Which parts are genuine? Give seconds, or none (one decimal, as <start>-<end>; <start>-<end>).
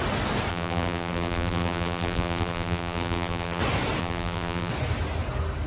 0.0-0.5; 3.6-4.0; 4.7-5.7